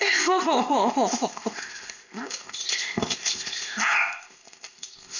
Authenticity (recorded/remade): remade